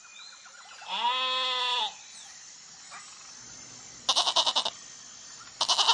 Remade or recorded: recorded